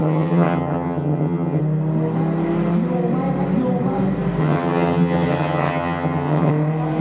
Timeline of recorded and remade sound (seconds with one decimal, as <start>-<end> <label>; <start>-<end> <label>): 0.0-1.6 remade; 1.6-4.4 recorded; 4.4-6.5 remade; 6.5-7.0 recorded